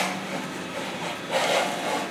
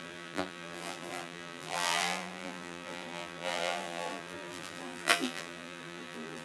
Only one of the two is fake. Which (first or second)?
second